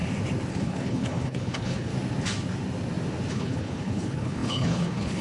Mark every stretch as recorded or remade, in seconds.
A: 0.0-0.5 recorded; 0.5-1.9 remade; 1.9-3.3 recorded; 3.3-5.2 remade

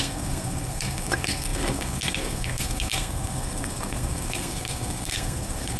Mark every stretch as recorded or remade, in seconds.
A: 0.0-5.8 remade

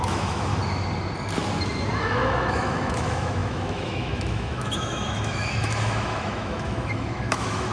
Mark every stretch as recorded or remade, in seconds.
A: 0.0-0.5 remade; 0.5-2.0 recorded; 2.0-7.7 remade

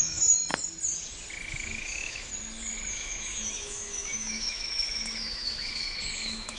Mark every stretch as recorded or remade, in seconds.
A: 0.0-0.4 remade; 0.4-1.5 recorded; 1.5-2.3 remade; 2.3-2.9 recorded; 2.9-6.6 remade